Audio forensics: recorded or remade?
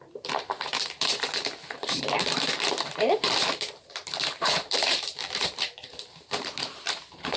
remade